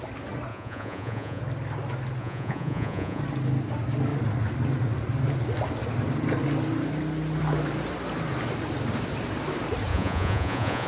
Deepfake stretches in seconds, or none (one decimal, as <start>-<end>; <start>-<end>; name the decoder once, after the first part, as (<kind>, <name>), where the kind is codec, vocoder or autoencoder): 0.5-1.4 (vocoder, Vocos); 2.2-3.2; 9.9-10.9